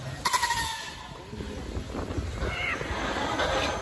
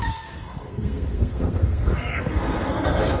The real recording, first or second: first